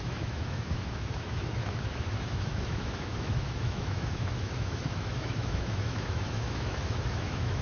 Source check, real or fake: fake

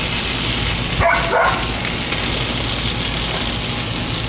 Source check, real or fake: real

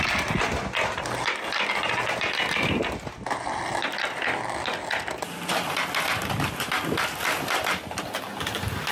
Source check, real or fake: real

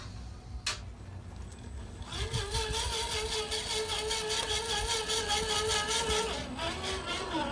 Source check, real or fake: real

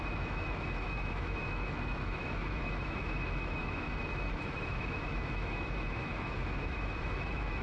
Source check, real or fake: fake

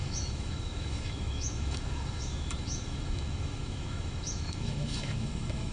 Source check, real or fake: fake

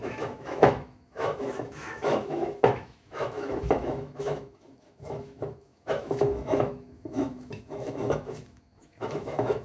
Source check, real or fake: fake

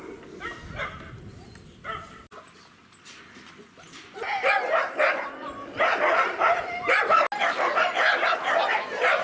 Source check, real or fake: real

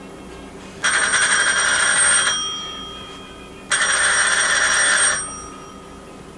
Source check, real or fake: real